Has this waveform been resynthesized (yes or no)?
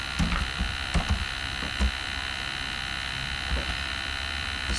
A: no